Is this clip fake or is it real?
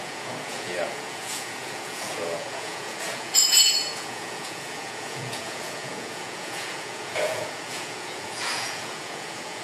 fake